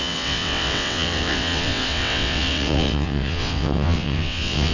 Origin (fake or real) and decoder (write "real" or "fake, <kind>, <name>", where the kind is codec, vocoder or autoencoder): fake, vocoder, WaveNeXt